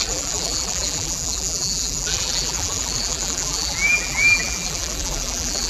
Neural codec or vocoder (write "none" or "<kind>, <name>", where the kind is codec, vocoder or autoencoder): vocoder, BigVGAN v2